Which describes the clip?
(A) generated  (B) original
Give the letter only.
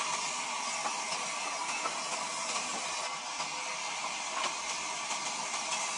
B